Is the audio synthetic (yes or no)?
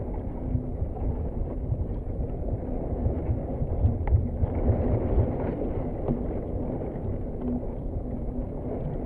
no